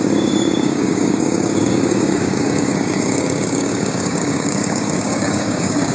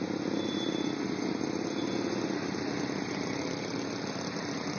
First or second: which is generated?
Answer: first